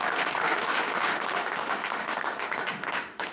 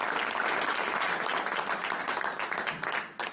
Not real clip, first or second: first